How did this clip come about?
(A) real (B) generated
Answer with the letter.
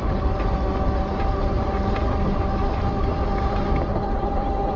A